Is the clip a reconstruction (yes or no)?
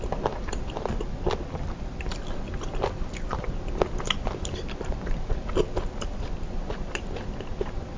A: no